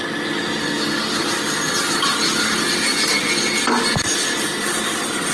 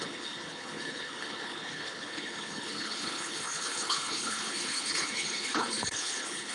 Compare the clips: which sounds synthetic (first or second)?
second